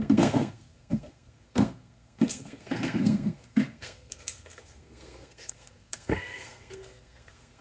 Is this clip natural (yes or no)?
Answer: no